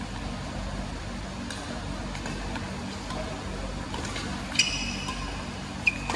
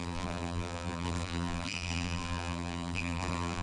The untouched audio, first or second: first